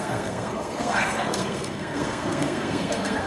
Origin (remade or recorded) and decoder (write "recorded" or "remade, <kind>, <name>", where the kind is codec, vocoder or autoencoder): remade, codec, SNAC